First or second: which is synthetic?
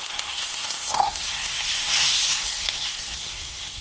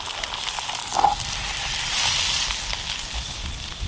first